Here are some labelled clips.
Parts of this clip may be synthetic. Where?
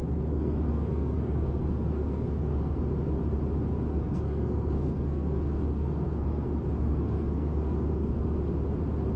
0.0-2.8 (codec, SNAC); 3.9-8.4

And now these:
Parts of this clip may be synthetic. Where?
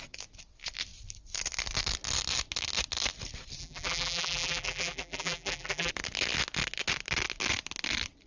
3.6-5.9 (vocoder, BigVGAN v2)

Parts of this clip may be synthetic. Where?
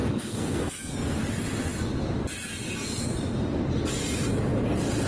0.0-1.2 (codec, SNAC)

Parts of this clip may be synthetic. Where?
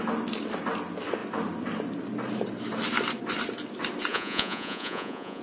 4.1-5.4 (vocoder, Vocos)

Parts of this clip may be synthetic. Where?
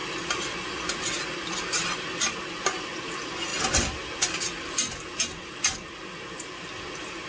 none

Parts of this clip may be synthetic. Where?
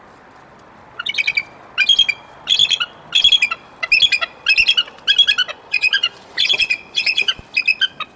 5.5-7.4 (vocoder, Vocos)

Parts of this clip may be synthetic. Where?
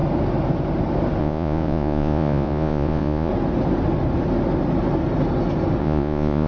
1.2-3.3 (vocoder, Vocos); 5.8-6.5